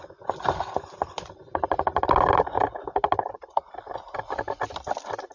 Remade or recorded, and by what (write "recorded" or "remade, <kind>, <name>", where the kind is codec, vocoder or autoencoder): recorded